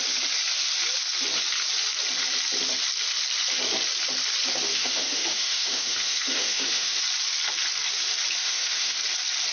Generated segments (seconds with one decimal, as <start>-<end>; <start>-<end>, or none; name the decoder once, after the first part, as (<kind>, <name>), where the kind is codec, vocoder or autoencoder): 4.7-7.0 (autoencoder, DAC-VAE); 8.4-9.0